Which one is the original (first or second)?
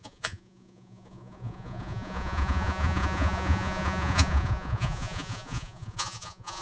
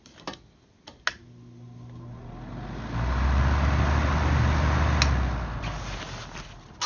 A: second